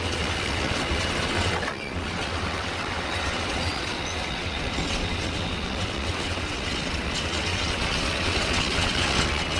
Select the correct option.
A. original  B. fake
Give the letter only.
B